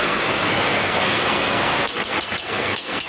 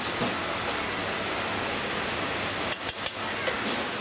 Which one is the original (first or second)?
second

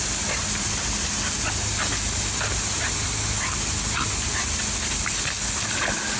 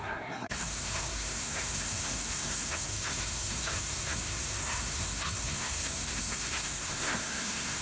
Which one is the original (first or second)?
first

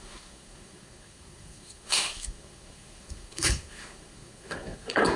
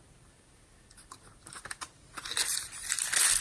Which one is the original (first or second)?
second